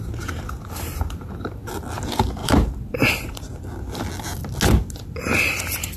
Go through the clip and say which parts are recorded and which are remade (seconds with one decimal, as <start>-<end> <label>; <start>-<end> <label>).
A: 0.0-2.4 recorded; 2.4-3.1 remade; 3.1-6.0 recorded